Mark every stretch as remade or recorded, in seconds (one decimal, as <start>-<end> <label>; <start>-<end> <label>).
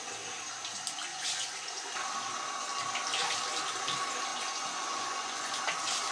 0.0-1.1 recorded; 1.1-1.9 remade; 1.9-4.3 recorded; 4.3-5.6 remade; 5.6-6.1 recorded